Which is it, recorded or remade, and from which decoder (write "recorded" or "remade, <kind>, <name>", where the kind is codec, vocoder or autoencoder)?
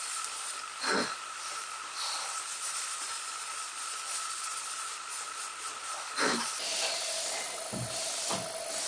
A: recorded